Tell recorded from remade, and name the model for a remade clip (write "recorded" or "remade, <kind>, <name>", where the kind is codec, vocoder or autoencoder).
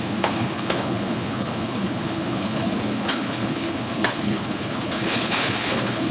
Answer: remade, codec, HILCodec